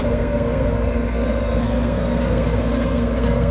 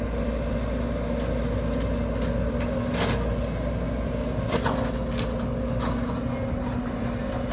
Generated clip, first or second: first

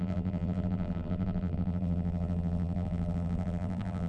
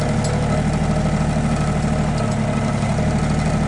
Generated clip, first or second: first